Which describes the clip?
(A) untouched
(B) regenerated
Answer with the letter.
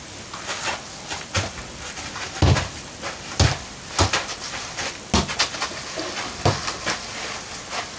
A